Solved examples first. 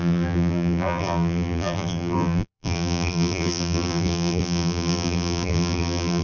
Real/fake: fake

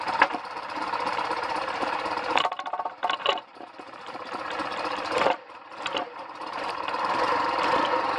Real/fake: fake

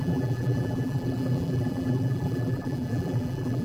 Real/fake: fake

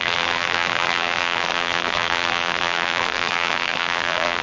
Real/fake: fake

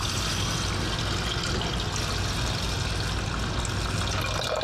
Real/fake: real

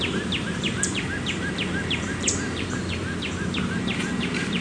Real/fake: fake